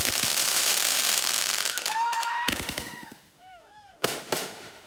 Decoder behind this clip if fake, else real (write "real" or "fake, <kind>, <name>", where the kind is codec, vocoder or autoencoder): fake, autoencoder, DAC-VAE